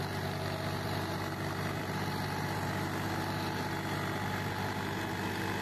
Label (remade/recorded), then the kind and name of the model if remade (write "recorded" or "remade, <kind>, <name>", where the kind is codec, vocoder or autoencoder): recorded